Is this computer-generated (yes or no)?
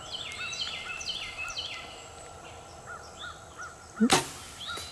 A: no